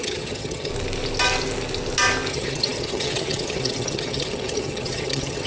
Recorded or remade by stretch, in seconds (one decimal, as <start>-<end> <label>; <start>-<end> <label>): 0.0-0.7 remade; 0.7-2.3 recorded; 2.3-5.5 remade